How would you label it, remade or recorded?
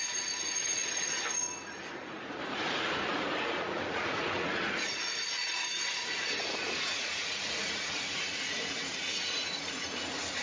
remade